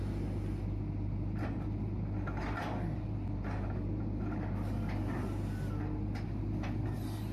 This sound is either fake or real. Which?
real